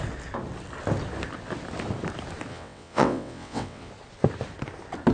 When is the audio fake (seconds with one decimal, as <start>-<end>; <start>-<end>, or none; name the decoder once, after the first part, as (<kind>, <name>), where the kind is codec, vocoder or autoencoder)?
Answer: 2.5-3.9 (vocoder, WaveNeXt)